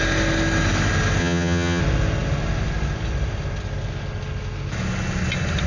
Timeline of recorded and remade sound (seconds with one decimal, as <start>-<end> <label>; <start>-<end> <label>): 0.0-1.2 recorded; 1.2-1.8 remade; 1.8-5.7 recorded